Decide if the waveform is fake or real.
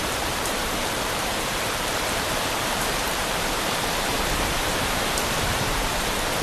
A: fake